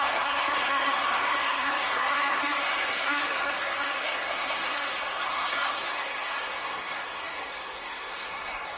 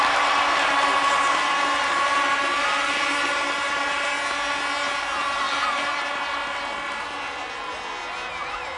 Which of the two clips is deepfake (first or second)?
first